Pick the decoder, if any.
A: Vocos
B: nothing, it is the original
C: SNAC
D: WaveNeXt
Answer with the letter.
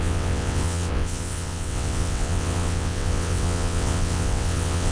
D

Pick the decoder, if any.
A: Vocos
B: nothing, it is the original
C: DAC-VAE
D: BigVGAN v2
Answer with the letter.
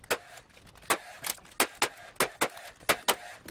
B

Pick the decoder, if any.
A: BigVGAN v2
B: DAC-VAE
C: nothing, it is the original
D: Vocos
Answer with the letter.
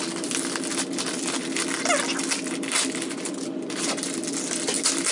C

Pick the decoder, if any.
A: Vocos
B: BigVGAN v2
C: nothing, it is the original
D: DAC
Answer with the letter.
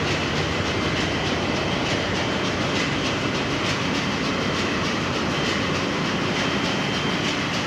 C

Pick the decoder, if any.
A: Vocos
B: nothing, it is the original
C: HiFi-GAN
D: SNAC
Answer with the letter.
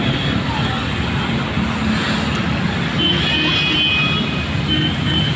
B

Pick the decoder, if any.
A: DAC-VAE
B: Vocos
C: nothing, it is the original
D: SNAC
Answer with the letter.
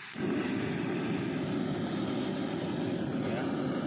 C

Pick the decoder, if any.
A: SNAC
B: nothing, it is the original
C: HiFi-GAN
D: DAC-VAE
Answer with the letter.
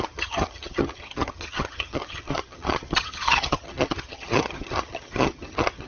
C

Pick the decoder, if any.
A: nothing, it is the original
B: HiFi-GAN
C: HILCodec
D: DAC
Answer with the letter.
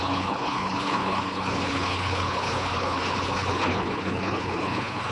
C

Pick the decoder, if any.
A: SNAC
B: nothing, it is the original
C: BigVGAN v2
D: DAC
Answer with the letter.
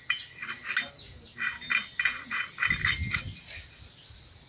B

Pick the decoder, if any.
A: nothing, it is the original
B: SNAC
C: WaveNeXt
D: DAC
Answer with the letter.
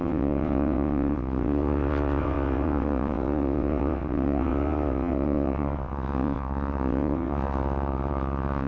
C